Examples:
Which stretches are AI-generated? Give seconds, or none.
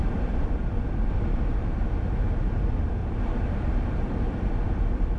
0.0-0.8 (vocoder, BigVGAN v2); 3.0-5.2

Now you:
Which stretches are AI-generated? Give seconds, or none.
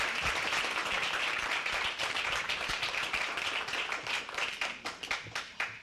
0.8-4.3 (vocoder, BigVGAN v2)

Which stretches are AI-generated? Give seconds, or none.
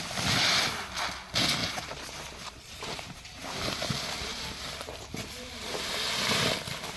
1.6-5.5 (vocoder, BigVGAN v2)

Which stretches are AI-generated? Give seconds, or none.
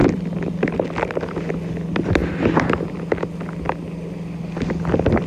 none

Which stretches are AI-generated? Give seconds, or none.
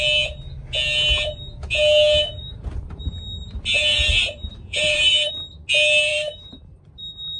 2.4-3.1 (vocoder, BigVGAN v2); 3.9-5.3; 6.1-6.8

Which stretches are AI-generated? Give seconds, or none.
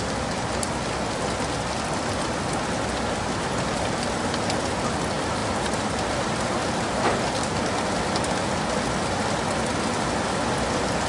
5.4-7.3 (vocoder, BigVGAN v2)